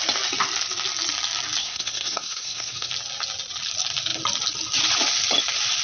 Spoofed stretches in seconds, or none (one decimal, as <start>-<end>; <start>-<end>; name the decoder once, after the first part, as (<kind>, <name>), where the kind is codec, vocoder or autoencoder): 1.6-2.9 (codec, SNAC)